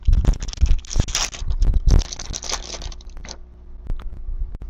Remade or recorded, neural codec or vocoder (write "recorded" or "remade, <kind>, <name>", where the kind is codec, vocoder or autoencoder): recorded